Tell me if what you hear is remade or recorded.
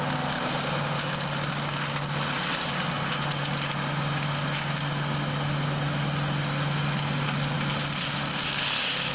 recorded